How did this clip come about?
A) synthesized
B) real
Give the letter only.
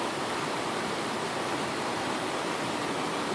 B